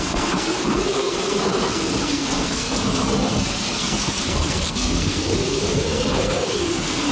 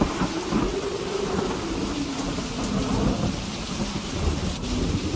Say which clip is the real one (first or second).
second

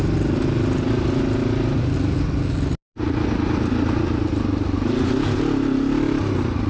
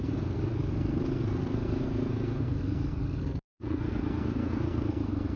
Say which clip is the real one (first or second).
first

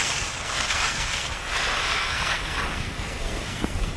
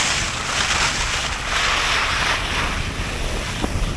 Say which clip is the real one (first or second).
second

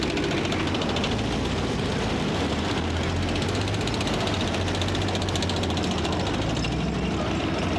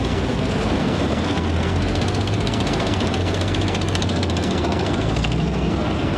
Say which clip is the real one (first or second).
first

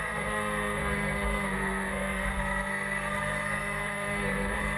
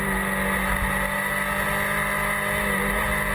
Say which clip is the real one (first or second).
second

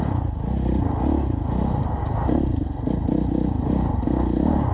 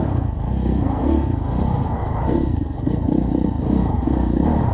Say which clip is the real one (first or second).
first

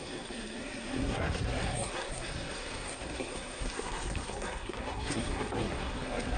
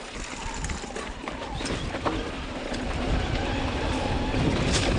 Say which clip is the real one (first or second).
second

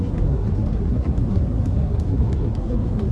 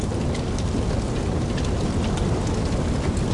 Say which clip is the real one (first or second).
second